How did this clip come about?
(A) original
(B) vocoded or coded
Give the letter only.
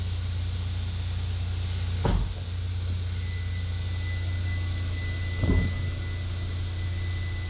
A